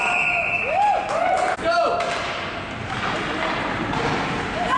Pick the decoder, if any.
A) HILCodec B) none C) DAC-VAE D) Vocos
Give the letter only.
B